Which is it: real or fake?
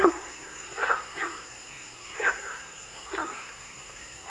fake